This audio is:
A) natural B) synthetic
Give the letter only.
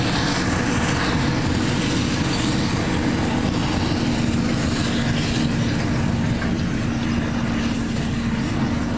A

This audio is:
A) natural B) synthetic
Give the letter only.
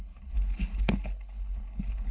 B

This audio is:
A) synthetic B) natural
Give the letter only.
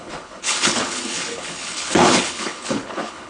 A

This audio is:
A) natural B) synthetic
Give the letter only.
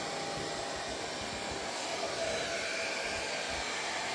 A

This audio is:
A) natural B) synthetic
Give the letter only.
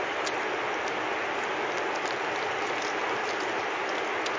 A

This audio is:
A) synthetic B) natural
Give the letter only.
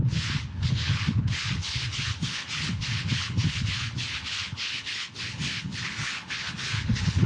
A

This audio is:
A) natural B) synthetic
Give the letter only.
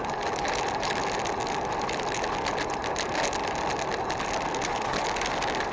A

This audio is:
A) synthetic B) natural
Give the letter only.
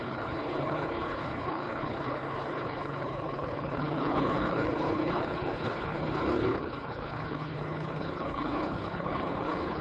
A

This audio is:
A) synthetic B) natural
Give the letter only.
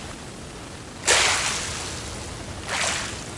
B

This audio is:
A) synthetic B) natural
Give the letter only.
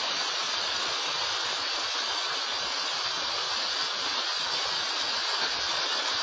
B